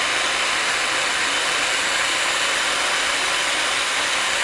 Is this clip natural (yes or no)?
yes